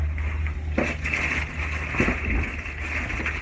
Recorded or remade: recorded